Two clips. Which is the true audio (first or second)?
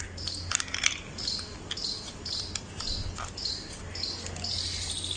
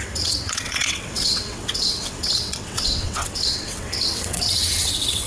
first